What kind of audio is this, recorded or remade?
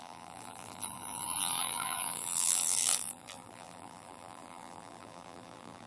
remade